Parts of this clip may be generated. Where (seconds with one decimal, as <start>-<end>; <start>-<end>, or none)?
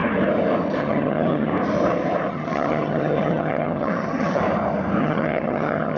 0.8-1.5; 2.3-4.4; 5.0-6.0